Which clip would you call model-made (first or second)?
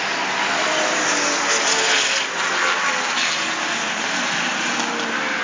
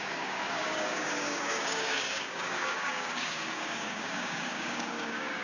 second